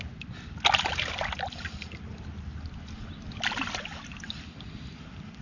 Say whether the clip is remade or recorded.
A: recorded